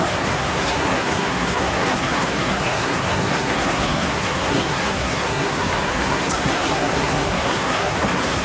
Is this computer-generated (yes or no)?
yes